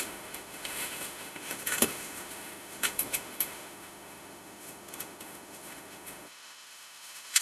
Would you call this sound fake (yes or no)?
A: yes